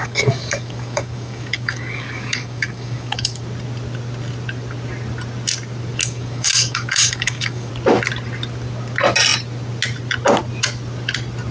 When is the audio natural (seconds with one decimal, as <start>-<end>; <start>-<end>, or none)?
3.4-6.0; 7.7-11.5